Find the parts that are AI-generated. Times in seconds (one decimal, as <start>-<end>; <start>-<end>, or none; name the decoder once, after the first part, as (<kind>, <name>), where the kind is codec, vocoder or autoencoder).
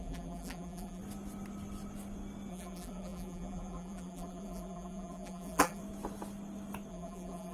0.0-1.0 (vocoder, BigVGAN v2); 2.5-5.8; 6.9-7.5